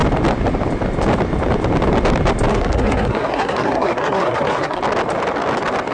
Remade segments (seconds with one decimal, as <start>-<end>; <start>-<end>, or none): 2.5-4.8